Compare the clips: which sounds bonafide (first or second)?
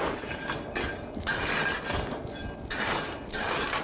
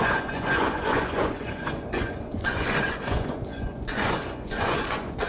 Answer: first